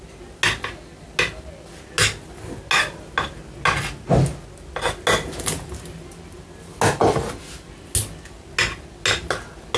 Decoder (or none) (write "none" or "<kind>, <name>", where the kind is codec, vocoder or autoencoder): none